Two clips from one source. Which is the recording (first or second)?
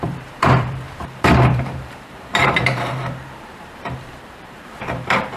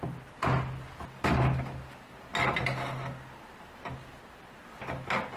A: second